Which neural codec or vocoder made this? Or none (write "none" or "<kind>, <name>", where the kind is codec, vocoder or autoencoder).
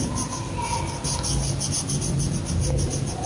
none